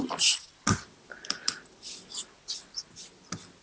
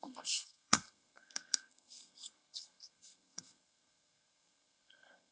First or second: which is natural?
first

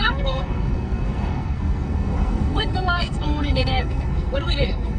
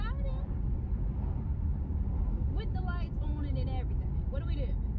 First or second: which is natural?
second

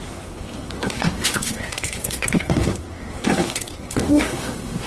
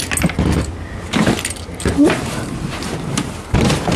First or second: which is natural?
second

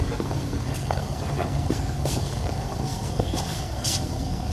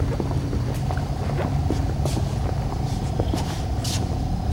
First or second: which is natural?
second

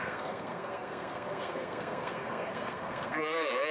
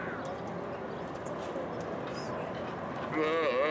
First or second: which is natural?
second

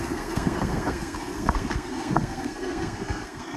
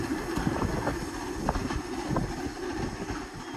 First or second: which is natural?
second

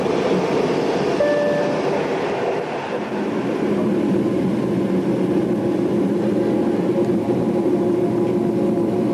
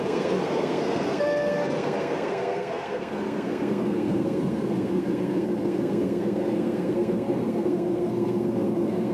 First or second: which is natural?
first